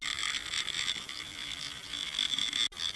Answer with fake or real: real